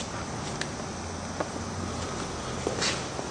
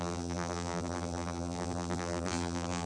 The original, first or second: first